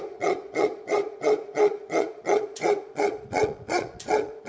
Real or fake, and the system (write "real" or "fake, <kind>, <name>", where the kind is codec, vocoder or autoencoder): fake, vocoder, Vocos